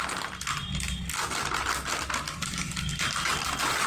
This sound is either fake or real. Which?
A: real